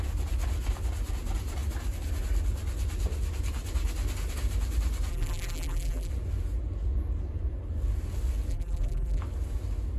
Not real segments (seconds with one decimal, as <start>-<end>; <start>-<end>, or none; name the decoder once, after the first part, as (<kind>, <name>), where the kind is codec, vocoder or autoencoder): 5.1-6.1 (vocoder, BigVGAN v2); 8.5-9.2